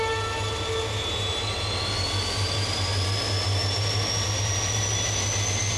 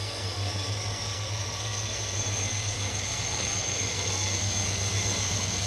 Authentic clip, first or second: first